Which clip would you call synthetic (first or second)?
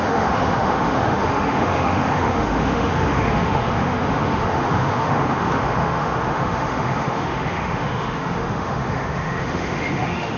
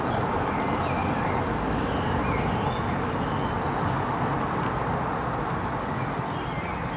first